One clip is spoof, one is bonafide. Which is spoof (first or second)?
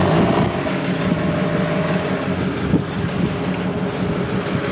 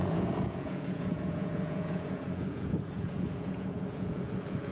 second